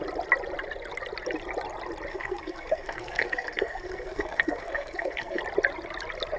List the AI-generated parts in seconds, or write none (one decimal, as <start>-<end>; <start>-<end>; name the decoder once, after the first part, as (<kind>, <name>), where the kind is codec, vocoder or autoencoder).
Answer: 2.1-5.4 (codec, SNAC)